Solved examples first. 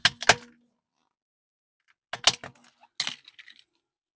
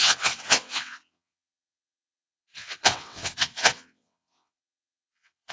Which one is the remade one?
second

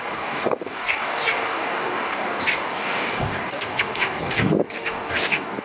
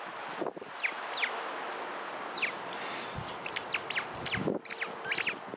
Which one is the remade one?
first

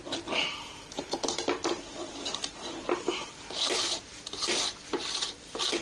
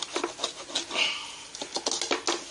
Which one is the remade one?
first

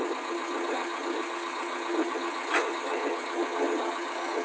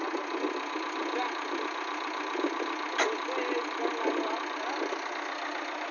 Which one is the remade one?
first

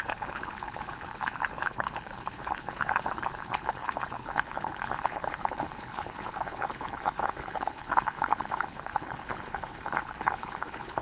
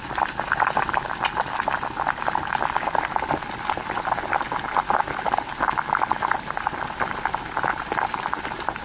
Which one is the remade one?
first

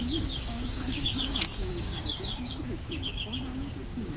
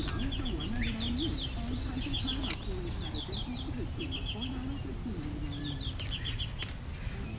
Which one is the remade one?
first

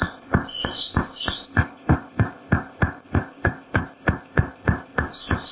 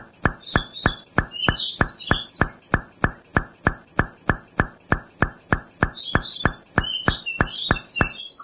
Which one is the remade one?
first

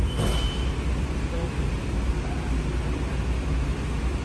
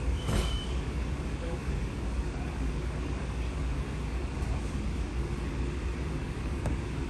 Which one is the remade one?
second